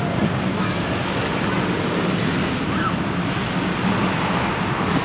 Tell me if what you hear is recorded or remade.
recorded